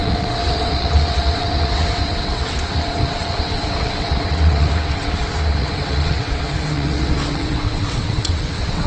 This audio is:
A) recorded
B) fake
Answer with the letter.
B